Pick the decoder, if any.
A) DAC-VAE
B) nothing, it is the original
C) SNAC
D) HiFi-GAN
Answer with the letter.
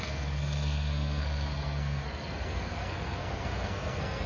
C